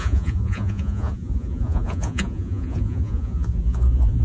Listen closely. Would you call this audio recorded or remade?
remade